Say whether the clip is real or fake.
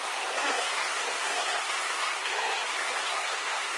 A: fake